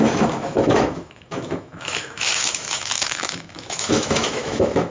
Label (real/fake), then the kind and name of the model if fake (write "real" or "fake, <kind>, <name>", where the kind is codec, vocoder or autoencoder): fake, autoencoder, DAC-VAE